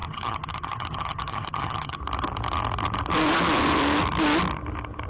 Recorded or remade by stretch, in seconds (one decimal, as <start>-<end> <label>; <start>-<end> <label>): 0.0-2.0 remade; 2.0-5.1 recorded